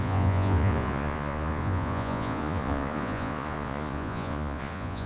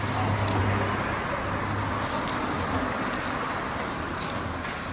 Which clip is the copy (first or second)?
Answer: first